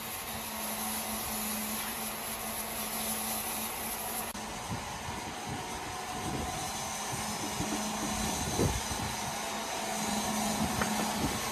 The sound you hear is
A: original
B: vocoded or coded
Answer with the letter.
A